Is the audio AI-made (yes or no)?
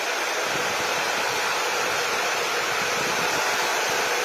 yes